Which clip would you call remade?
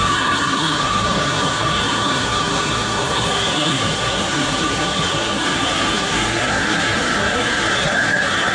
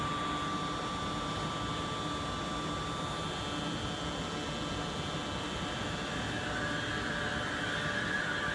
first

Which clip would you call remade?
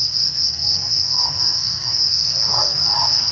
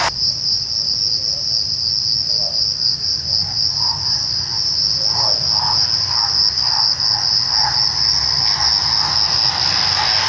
first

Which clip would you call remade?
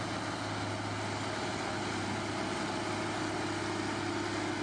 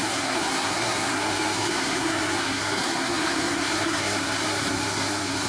second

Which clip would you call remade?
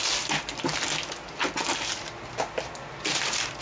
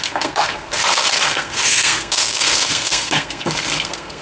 second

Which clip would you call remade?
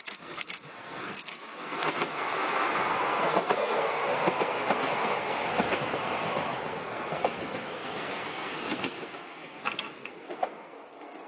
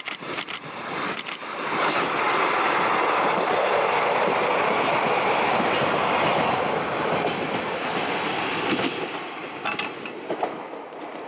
first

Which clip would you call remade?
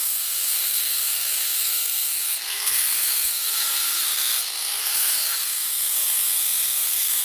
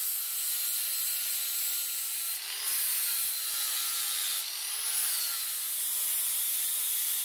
first